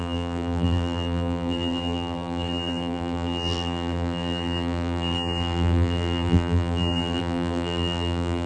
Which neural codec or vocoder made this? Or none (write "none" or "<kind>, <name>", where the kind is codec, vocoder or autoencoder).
vocoder, BigVGAN v2